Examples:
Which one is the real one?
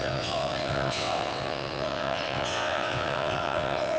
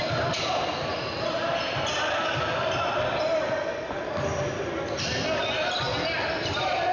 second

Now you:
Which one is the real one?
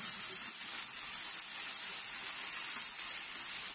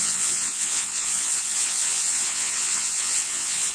first